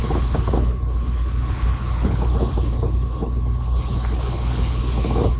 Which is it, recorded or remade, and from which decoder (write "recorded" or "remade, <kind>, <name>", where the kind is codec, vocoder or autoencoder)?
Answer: remade, codec, HILCodec